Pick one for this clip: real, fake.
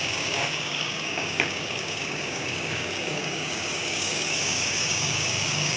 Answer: fake